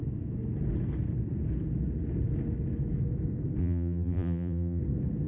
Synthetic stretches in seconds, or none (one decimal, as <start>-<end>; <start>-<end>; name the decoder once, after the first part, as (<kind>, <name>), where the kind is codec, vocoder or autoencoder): 3.6-4.8 (vocoder, BigVGAN v2)